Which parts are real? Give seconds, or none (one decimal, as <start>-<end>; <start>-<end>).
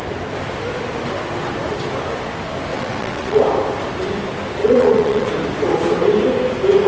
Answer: 0.0-2.7; 3.4-4.6; 5.3-6.9